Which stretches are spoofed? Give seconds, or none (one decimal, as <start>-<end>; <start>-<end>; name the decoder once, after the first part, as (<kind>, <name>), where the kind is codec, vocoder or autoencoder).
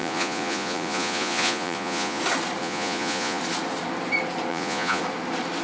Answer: 0.0-2.2 (vocoder, Vocos); 2.6-3.4; 4.5-5.0